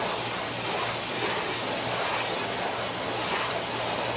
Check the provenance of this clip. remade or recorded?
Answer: recorded